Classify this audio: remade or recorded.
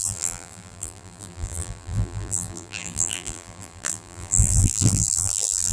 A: remade